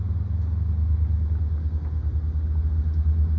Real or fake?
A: real